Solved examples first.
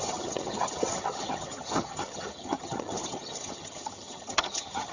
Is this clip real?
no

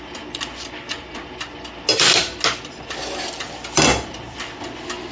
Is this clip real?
yes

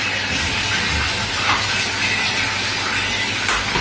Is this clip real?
yes